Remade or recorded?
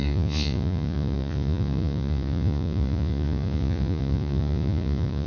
remade